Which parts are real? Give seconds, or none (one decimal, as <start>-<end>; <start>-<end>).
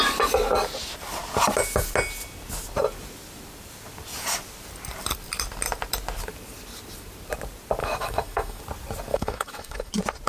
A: 0.0-7.8; 8.6-9.1; 9.9-10.3